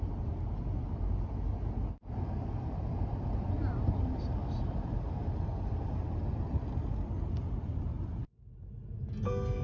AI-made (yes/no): no